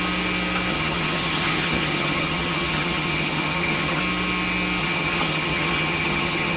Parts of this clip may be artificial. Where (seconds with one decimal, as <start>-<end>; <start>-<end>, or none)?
0.7-4.0; 4.8-6.6